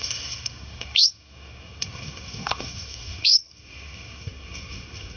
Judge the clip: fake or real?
fake